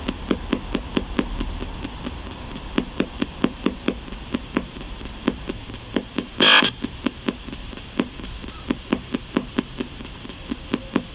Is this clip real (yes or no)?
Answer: yes